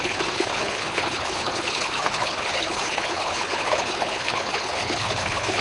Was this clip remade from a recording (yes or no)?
yes